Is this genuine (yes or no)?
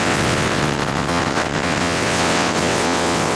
no